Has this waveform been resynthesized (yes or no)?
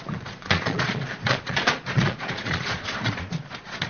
yes